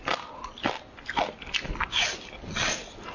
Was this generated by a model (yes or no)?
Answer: no